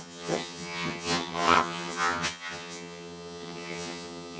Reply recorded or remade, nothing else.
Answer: remade